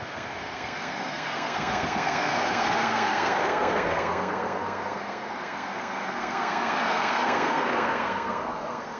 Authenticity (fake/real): fake